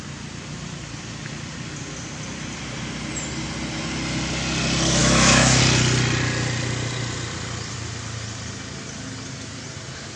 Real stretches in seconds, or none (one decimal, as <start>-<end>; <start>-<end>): 0.0-5.0; 5.6-10.2